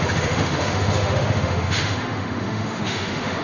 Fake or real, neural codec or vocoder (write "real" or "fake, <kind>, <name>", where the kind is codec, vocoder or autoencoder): fake, autoencoder, DAC-VAE